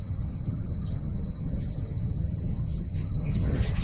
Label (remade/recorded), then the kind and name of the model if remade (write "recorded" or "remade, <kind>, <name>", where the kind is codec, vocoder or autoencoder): remade, vocoder, HiFi-GAN